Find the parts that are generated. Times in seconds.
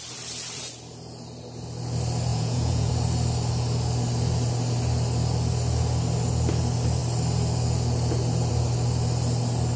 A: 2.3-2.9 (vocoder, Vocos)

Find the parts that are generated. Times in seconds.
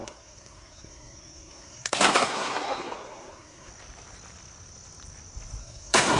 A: 0.0-3.7 (codec, SNAC); 5.6-6.2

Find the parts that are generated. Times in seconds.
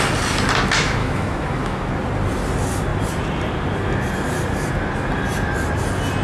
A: 1.0-1.9 (autoencoder, DAC-VAE)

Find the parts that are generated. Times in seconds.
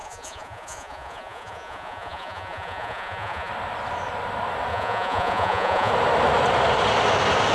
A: 0.0-3.5 (vocoder, Vocos); 4.7-5.9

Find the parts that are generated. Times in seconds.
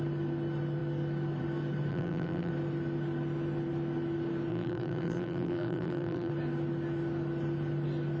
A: 1.9-2.5 (vocoder, BigVGAN v2); 4.5-6.3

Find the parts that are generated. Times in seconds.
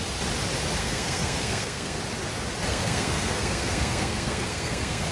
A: 0.8-2.0 (codec, SNAC); 2.7-5.1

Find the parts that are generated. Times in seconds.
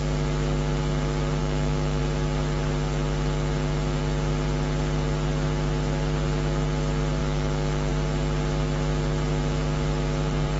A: 1.4-2.0 (autoencoder, DAC-VAE); 7.2-7.9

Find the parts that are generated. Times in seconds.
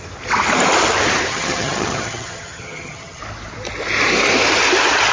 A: 1.3-3.2 (vocoder, HiFi-GAN)